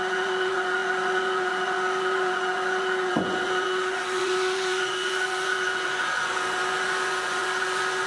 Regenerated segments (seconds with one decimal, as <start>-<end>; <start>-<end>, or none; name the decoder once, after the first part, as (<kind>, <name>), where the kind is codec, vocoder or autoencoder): 0.0-8.1 (vocoder, Vocos)